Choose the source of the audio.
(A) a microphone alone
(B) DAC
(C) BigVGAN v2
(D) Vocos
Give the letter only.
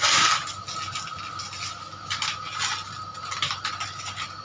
A